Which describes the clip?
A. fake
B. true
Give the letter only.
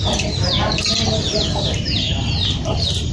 B